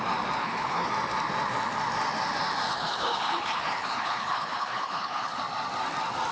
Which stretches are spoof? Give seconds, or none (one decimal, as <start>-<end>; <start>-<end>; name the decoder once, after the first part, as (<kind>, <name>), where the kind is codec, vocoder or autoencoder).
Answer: 0.4-0.9 (codec, HILCodec); 2.7-5.4